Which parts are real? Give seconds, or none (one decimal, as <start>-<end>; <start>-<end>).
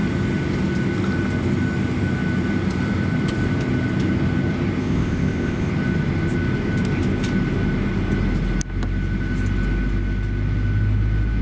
0.0-4.8; 5.7-11.4